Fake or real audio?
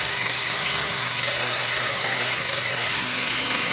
fake